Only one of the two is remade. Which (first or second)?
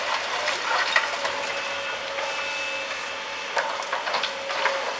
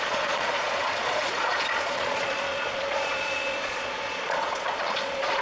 second